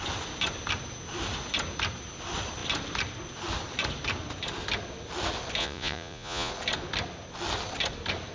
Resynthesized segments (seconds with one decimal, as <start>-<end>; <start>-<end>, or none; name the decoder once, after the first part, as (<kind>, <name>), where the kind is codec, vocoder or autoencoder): 5.6-6.5 (vocoder, Vocos)